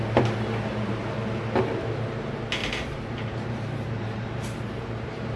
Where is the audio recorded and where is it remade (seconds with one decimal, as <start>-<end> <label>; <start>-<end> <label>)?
0.0-2.6 recorded; 2.6-5.4 remade